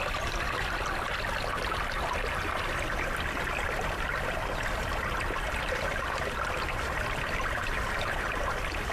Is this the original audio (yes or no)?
yes